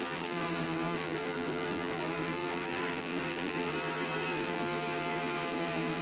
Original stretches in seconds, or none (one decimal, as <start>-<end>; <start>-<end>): none